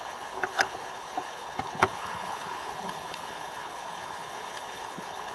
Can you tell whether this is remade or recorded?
remade